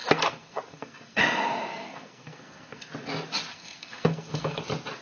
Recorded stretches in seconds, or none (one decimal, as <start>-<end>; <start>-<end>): 1.2-1.7; 2.9-3.5; 4.6-5.0